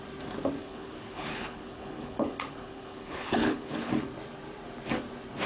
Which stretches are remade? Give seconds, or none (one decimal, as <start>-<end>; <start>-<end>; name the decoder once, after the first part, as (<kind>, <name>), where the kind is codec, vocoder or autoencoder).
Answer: 0.6-3.9 (codec, HILCodec)

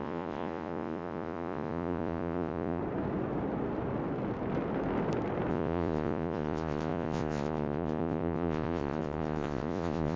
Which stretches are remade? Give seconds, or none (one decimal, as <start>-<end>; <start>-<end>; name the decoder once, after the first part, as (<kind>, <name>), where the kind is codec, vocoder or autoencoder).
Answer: 0.0-2.8 (vocoder, Vocos); 5.5-10.2